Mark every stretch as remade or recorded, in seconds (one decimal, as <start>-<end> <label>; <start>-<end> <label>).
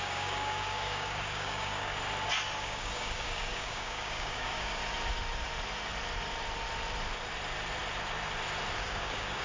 0.0-1.9 remade; 1.9-2.6 recorded; 2.6-4.8 remade; 4.8-8.8 recorded; 8.8-9.4 remade